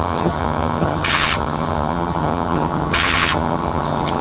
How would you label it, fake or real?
fake